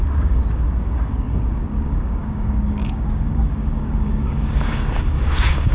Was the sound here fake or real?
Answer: fake